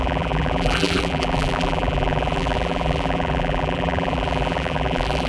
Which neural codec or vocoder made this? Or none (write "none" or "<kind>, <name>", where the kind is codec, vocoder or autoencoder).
vocoder, BigVGAN v2